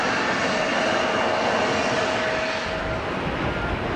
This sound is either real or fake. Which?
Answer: real